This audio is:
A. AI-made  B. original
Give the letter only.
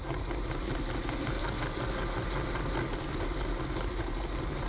B